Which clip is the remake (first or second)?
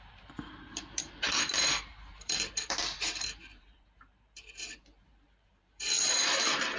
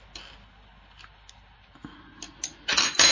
first